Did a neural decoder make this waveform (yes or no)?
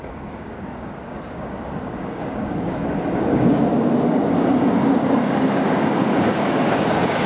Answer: yes